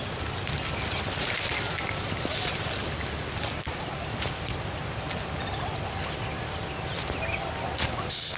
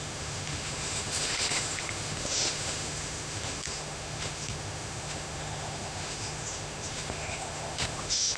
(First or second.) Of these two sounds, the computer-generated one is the second